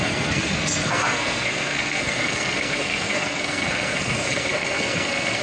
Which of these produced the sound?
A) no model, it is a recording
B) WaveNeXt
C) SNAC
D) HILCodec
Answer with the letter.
C